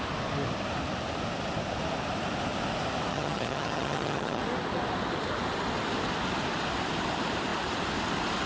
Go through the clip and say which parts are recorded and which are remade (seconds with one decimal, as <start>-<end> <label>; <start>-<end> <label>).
0.0-3.1 recorded; 3.1-4.4 remade; 4.4-8.5 recorded